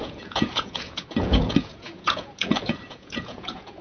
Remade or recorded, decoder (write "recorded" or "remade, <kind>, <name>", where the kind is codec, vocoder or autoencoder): remade, vocoder, Vocos